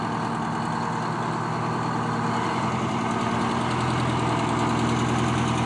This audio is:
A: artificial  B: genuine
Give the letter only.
B